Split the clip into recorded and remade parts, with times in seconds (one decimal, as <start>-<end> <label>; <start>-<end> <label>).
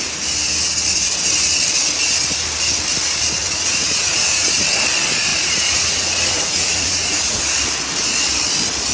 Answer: 0.0-3.4 recorded; 3.4-4.6 remade; 4.6-5.3 recorded; 5.3-7.4 remade; 7.4-8.9 recorded